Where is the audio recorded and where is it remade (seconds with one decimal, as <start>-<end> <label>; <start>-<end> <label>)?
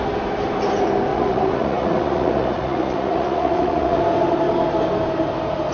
0.0-1.1 recorded; 1.1-4.0 remade; 4.0-5.7 recorded